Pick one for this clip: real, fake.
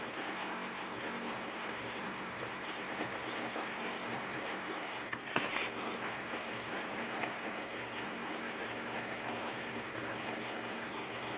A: fake